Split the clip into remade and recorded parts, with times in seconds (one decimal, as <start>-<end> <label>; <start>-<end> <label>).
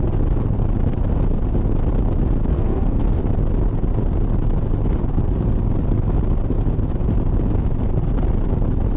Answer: 0.0-2.5 recorded; 2.5-3.2 remade; 3.2-9.0 recorded